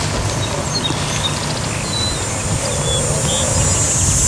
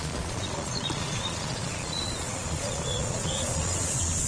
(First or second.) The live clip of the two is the first